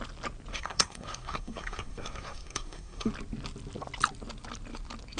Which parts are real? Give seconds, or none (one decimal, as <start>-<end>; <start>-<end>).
0.0-0.5; 3.1-5.2